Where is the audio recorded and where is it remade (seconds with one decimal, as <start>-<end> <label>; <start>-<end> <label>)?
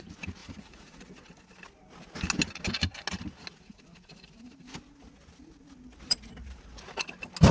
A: 0.0-0.4 recorded; 0.4-1.1 remade; 1.1-7.5 recorded